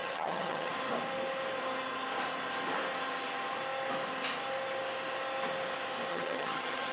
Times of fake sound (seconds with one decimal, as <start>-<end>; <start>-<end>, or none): 0.0-0.7; 6.1-6.9